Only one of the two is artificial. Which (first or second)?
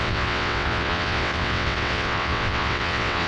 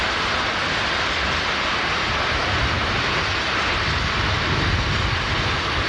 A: first